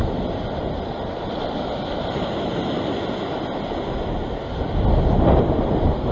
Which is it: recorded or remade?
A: recorded